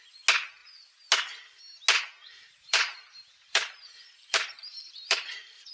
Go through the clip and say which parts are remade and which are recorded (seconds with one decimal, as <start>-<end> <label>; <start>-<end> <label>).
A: 0.0-2.2 recorded; 2.2-5.7 remade